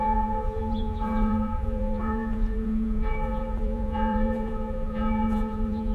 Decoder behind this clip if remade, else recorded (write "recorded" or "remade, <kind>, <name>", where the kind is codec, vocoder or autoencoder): remade, vocoder, Vocos